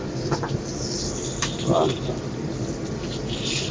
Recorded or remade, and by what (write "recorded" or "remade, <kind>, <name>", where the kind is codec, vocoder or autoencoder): recorded